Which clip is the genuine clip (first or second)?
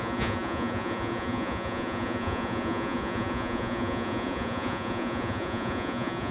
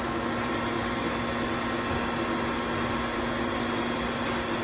second